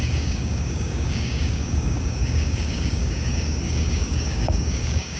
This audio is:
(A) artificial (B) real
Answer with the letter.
A